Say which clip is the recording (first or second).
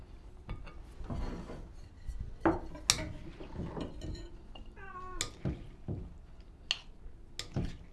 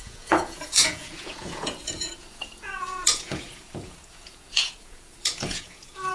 first